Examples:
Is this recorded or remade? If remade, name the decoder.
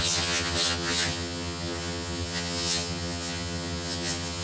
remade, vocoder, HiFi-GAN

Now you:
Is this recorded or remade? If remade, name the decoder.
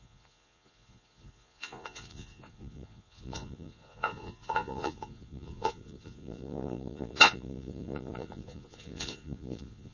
remade, vocoder, Vocos